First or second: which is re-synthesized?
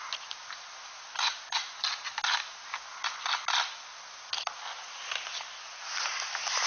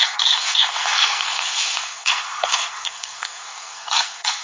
second